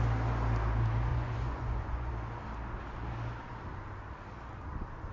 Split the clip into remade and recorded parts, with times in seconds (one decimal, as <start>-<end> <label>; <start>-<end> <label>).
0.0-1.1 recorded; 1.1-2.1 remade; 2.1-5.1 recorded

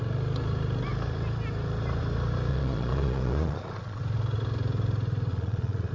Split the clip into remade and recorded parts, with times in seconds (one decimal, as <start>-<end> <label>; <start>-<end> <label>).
0.0-2.5 recorded; 2.5-4.0 remade; 4.0-5.3 recorded; 5.3-5.9 remade

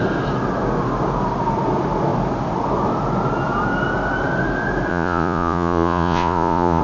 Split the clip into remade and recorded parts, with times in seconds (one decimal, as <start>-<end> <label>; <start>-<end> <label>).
0.0-4.9 recorded; 4.9-6.8 remade

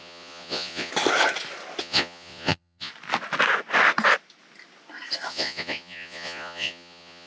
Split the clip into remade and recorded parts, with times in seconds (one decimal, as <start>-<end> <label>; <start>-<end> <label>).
0.0-0.9 remade; 0.9-1.8 recorded; 1.8-2.9 remade; 2.9-5.3 recorded; 5.3-7.3 remade